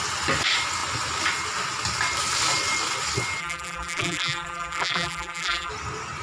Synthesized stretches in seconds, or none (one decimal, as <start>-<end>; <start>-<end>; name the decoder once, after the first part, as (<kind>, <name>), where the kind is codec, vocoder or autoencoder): 3.4-5.7 (vocoder, BigVGAN v2)